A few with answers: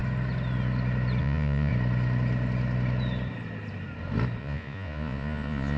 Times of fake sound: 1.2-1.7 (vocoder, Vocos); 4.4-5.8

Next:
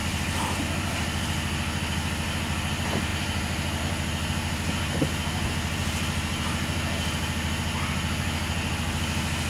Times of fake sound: none

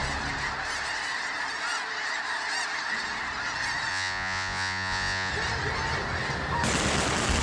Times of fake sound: 3.9-5.3 (vocoder, Vocos)

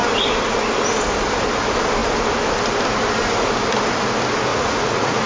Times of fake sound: 4.5-5.3 (vocoder, Vocos)